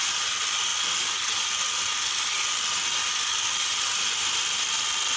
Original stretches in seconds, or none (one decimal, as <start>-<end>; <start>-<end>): 0.0-5.2